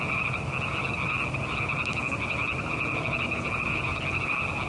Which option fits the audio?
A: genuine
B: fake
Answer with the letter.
A